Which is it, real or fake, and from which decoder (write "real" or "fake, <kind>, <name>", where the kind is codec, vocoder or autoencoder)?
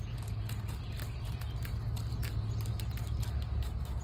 real